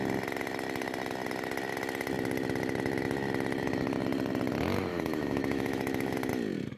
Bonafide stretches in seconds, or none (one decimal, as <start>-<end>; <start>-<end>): 0.0-4.9; 6.3-6.8